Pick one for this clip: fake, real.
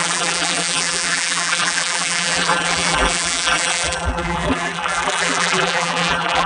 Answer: fake